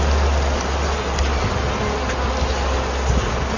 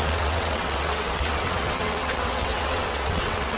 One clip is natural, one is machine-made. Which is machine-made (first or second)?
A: second